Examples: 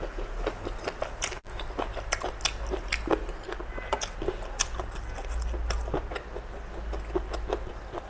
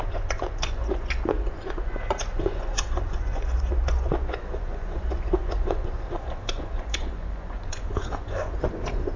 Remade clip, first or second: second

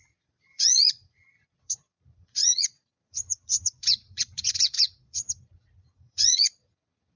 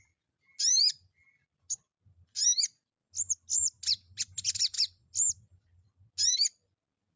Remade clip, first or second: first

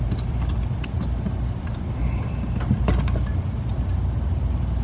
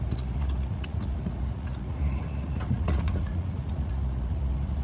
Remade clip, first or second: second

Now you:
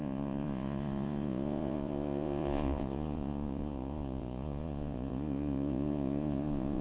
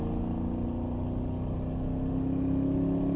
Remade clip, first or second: first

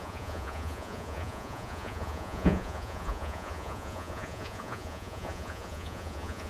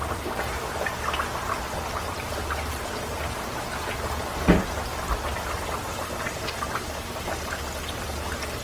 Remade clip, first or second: first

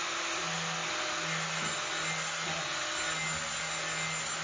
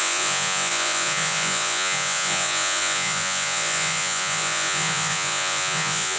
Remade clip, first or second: second